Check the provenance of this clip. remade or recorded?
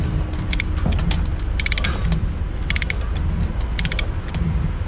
recorded